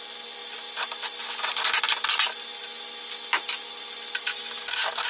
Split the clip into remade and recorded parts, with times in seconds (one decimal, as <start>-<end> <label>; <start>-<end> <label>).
0.0-4.3 recorded; 4.3-5.1 remade